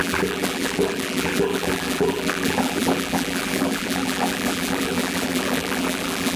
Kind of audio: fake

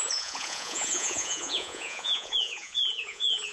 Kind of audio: fake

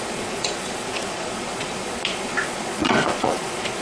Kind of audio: fake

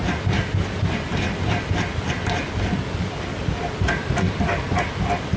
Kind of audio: real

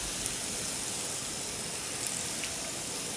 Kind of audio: real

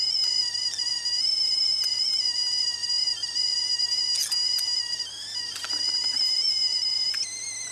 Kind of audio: real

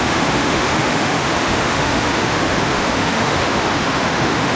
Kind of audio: fake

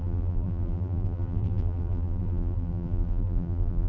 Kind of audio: fake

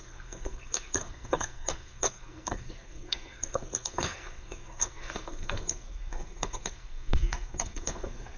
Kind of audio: fake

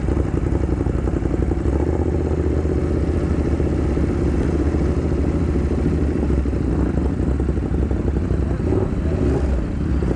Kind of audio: real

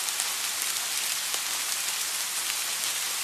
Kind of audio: real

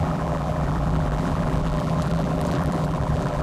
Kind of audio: fake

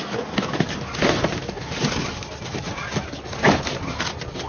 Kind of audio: real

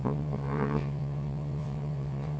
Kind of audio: fake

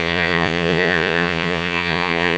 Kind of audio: fake